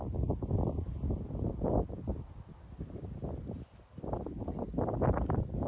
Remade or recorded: recorded